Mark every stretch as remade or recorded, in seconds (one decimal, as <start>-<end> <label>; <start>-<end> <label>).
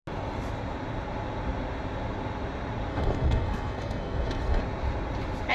0.0-2.9 recorded; 2.9-4.6 remade; 4.6-5.5 recorded